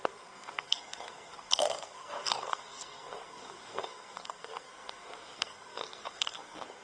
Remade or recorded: remade